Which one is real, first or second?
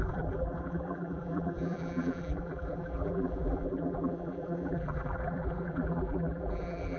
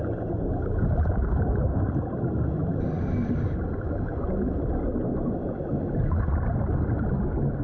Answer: second